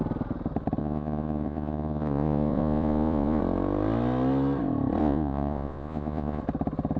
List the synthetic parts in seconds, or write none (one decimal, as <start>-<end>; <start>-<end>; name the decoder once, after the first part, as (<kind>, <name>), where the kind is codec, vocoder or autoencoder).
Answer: 0.8-3.4 (vocoder, Vocos); 5.0-6.4

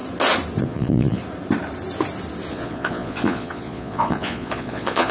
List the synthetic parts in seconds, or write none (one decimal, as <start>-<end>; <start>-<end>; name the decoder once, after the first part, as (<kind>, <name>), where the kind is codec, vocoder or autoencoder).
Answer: 0.6-1.2 (vocoder, Vocos); 2.5-5.1